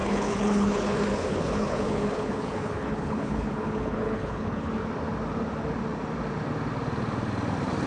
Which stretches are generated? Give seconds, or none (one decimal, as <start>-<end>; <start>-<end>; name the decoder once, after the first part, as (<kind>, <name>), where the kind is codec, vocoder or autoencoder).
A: 0.0-4.7 (codec, HILCodec)